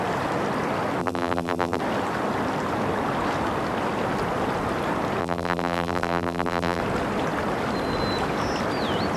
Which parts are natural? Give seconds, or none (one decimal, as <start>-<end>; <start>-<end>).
0.0-1.0; 1.8-5.2; 6.8-9.2